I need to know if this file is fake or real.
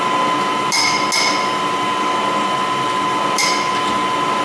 real